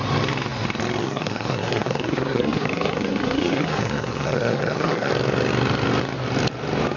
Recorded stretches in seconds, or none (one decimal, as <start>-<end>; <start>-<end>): 0.0-1.0; 5.1-7.0